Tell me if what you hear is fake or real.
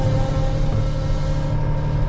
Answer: real